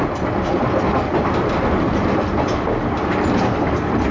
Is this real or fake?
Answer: real